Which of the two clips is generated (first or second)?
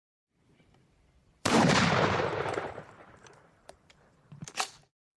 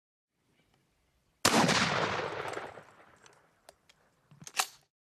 first